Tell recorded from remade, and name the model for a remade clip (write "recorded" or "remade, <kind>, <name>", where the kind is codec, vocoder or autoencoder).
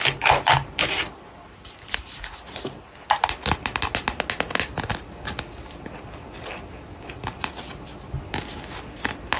recorded